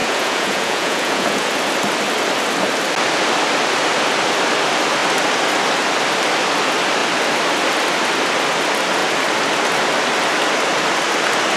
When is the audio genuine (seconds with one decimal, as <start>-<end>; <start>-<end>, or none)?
1.5-11.6